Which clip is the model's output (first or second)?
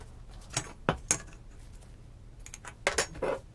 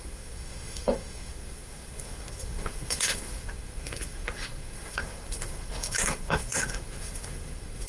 second